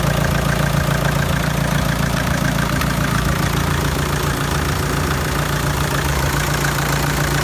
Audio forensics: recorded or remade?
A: remade